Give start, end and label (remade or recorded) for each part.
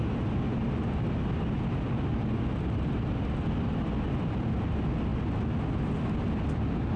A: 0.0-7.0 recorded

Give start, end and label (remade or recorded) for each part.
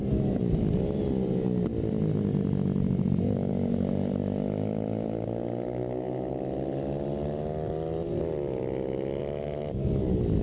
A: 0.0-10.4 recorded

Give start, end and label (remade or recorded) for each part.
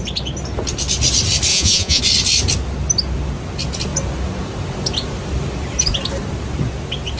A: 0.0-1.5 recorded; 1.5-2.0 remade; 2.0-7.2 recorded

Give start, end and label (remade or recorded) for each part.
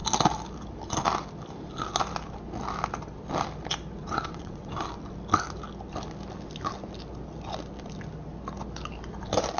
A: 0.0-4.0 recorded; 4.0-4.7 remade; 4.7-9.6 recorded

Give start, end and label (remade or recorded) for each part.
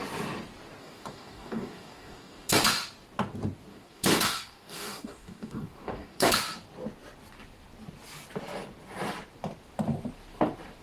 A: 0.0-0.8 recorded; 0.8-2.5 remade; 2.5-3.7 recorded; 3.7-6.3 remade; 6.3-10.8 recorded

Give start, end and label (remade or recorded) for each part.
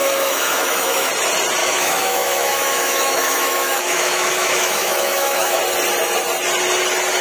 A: 0.0-1.1 remade; 1.1-1.6 recorded; 1.6-5.6 remade; 5.6-7.2 recorded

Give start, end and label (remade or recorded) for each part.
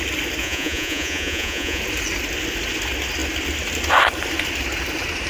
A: 0.0-0.4 recorded; 0.4-1.8 remade; 1.8-5.3 recorded